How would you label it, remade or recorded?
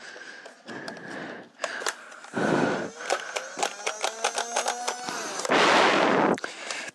recorded